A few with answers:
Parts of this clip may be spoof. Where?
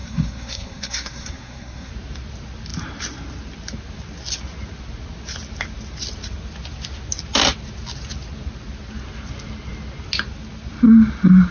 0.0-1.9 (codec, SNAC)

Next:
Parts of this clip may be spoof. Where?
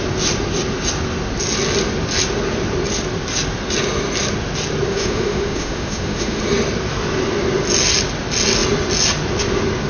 4.9-6.4 (autoencoder, DAC-VAE)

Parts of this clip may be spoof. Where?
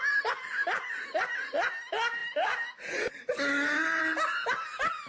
none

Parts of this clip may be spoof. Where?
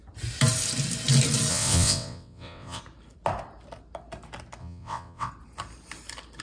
1.5-2.8 (vocoder, WaveNeXt); 4.6-5.3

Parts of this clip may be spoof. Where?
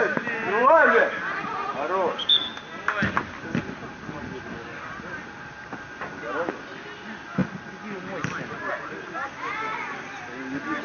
0.6-1.2 (codec, DAC)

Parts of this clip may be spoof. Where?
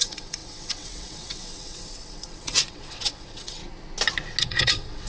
0.0-3.6 (vocoder, WaveNeXt); 4.4-5.1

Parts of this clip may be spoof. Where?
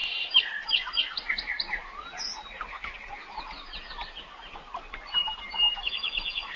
none